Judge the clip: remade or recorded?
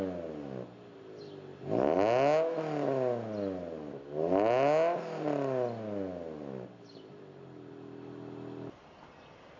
recorded